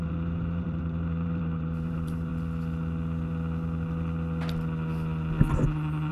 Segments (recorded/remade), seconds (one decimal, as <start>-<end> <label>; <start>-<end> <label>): 0.0-2.3 remade; 2.3-6.1 recorded